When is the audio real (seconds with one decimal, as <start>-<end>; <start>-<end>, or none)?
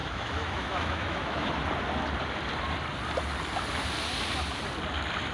1.6-5.3